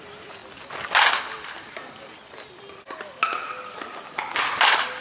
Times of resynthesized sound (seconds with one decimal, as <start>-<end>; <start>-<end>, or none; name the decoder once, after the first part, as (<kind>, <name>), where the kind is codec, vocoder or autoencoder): 0.0-0.4 (vocoder, BigVGAN v2); 1.7-2.2